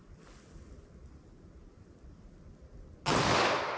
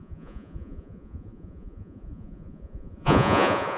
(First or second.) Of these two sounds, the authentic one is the first